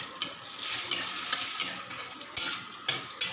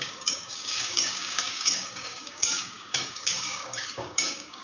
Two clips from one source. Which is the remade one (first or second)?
second